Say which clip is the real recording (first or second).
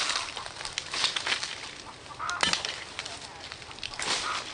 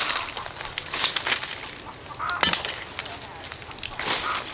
second